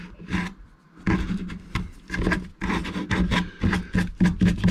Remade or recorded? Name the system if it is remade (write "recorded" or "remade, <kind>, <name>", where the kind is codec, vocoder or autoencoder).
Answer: recorded